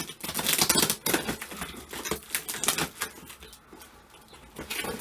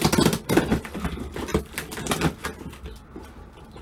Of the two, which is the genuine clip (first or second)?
first